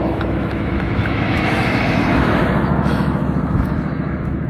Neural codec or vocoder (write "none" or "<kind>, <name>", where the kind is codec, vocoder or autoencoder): autoencoder, DAC-VAE